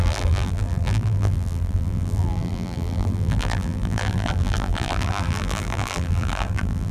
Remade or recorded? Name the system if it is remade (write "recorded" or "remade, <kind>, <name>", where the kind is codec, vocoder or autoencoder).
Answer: remade, vocoder, BigVGAN v2